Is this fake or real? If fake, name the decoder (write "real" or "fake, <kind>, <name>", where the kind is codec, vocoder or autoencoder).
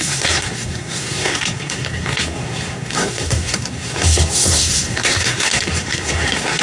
fake, codec, SNAC